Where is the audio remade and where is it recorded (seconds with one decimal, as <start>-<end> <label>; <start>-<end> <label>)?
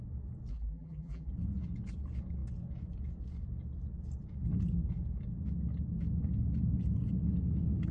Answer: 0.0-0.5 recorded; 0.5-1.3 remade; 1.3-7.9 recorded